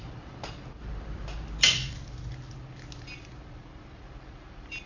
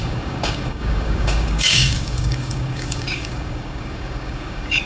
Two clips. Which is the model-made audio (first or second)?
second